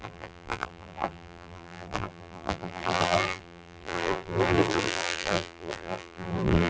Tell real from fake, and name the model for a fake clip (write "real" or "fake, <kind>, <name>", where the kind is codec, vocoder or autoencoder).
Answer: fake, vocoder, BigVGAN v2